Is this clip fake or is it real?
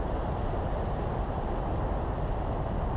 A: real